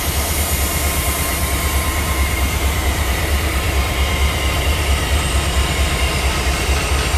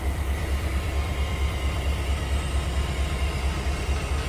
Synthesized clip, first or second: first